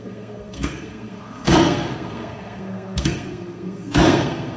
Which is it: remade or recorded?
remade